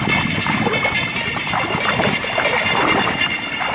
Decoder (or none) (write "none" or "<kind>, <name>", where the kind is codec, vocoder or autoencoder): none